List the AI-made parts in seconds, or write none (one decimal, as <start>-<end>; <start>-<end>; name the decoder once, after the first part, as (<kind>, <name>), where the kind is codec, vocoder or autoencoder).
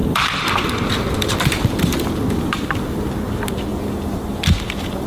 0.0-3.1 (vocoder, BigVGAN v2); 3.7-5.1